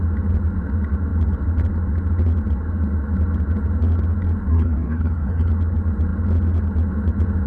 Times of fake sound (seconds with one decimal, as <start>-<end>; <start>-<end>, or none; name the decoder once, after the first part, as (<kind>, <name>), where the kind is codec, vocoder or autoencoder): 4.5-5.5 (codec, SNAC)